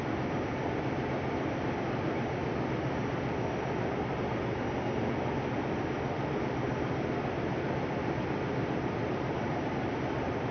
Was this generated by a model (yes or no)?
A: yes